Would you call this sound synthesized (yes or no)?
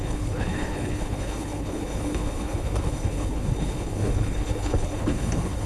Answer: yes